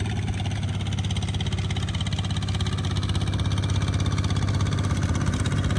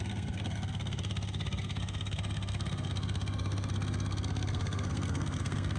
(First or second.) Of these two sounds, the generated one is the second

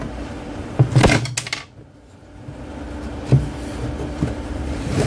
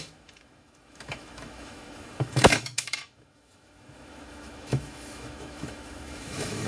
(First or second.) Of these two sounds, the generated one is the second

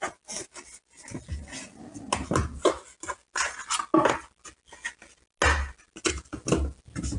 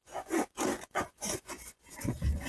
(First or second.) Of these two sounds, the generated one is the second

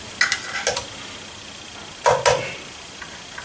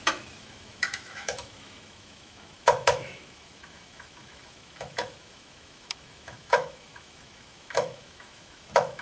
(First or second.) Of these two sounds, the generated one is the second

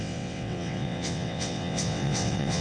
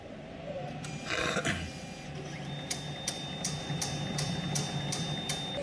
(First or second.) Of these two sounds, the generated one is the first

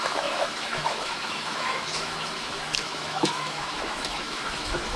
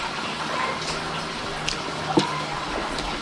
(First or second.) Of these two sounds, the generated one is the first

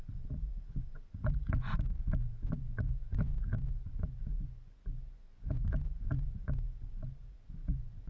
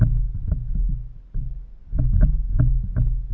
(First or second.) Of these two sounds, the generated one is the first